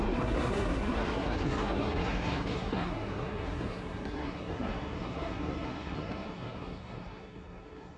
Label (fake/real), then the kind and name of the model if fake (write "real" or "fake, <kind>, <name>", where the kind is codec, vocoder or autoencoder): fake, codec, SNAC